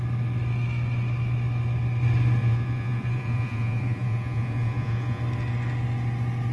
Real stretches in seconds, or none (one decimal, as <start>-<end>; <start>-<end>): 0.0-2.4; 5.2-6.5